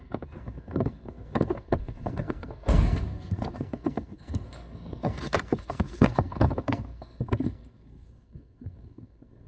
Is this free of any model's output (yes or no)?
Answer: no